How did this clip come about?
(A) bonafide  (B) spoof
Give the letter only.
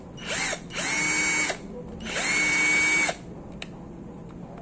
A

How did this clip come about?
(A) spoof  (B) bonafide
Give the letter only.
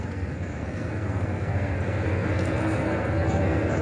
A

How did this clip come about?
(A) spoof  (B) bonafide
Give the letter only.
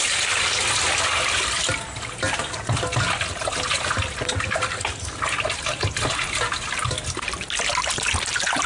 B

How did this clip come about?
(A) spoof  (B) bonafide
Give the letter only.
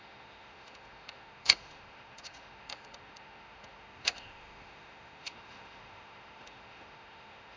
A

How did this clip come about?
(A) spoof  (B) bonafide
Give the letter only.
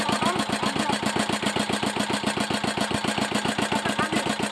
B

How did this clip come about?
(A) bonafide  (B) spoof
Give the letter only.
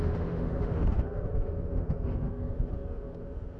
B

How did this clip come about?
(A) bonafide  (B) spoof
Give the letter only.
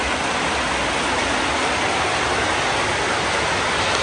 A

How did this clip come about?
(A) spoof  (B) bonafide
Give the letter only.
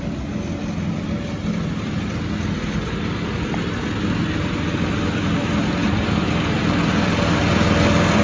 B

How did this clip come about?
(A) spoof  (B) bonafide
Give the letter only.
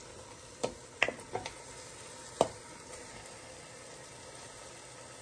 B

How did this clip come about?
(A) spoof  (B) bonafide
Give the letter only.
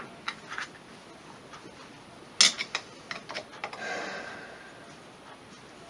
B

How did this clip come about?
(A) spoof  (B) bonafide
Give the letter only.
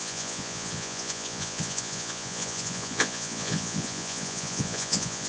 A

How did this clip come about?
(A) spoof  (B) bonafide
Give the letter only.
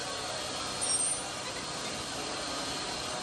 B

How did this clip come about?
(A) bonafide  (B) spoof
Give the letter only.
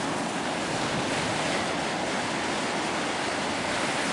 A